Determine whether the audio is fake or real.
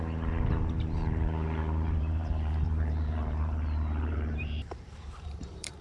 fake